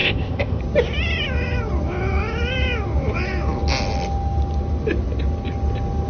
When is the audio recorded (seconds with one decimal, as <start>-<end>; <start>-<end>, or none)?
0.6-6.1